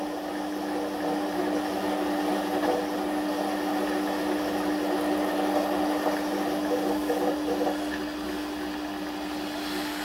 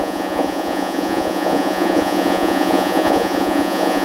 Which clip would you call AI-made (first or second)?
second